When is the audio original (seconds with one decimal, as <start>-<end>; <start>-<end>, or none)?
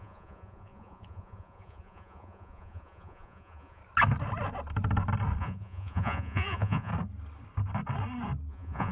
3.8-5.4; 6.9-8.5